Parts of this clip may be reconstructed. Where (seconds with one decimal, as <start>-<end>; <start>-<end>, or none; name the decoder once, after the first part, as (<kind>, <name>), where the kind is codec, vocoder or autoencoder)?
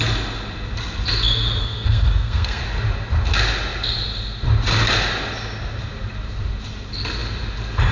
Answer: 1.6-2.6 (codec, SNAC)